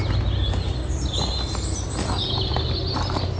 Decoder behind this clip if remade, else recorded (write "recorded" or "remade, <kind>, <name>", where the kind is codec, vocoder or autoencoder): recorded